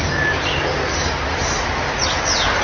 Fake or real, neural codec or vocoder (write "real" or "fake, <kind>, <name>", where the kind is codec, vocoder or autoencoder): real